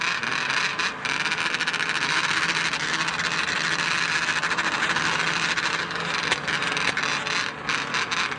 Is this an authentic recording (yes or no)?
yes